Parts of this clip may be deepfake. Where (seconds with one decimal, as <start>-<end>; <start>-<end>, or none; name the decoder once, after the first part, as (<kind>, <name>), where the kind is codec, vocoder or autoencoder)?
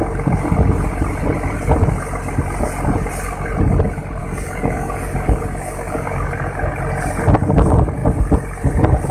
4.2-6.7 (codec, DAC)